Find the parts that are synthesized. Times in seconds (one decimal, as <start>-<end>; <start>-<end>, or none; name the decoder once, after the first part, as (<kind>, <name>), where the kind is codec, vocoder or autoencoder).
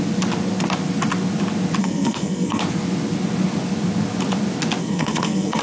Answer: 1.8-2.6 (codec, SNAC); 4.8-5.6